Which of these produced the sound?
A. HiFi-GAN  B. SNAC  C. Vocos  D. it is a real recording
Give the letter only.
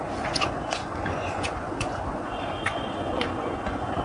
C